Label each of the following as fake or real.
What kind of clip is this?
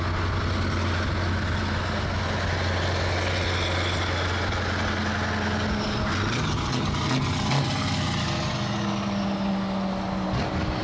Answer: real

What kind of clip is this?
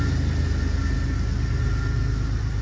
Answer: real